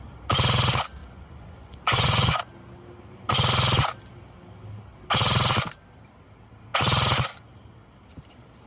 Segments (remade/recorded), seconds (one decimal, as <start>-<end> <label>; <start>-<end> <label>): 0.0-1.0 recorded; 1.0-2.4 remade; 2.4-8.7 recorded

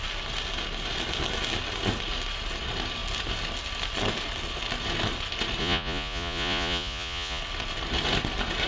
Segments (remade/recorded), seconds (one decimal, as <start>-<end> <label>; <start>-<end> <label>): 0.0-5.6 recorded; 5.6-7.4 remade; 7.4-8.7 recorded

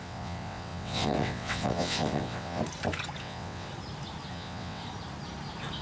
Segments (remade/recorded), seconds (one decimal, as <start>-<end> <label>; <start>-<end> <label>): 0.0-2.6 remade; 2.6-3.2 recorded; 3.2-3.7 remade; 3.7-4.3 recorded; 4.3-4.8 remade; 4.8-5.8 recorded